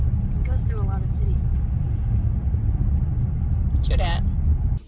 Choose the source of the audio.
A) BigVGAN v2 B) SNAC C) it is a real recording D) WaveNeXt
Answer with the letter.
C